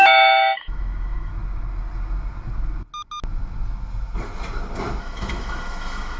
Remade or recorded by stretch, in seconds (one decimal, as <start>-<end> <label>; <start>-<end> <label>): 0.0-1.3 remade; 1.3-5.0 recorded; 5.0-6.2 remade